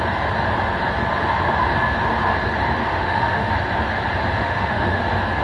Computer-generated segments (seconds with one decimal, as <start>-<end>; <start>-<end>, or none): 2.8-3.5; 4.4-5.0

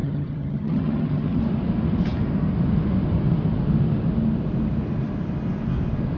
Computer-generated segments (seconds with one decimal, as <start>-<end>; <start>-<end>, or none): 0.0-1.4

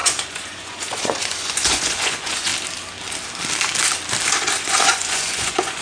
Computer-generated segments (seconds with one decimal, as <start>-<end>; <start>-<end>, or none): 0.0-2.5; 4.5-5.8

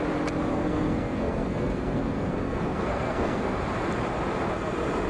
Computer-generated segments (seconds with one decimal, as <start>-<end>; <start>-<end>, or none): 0.5-3.6

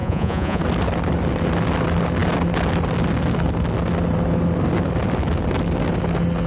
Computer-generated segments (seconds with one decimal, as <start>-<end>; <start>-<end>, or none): 0.0-0.6

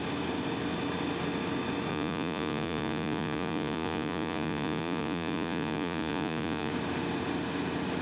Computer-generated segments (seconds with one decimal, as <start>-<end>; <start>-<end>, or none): 1.9-6.7

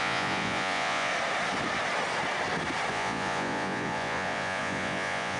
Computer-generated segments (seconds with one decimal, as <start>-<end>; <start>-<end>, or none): 0.0-1.1; 2.9-5.4

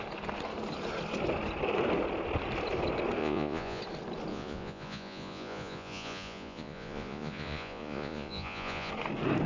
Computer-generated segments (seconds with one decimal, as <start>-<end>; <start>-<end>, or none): 3.2-3.8; 4.3-8.9